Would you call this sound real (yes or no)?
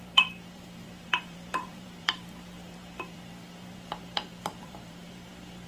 no